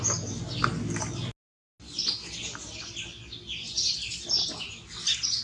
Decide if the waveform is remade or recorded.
recorded